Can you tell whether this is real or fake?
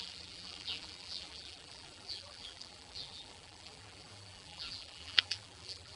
fake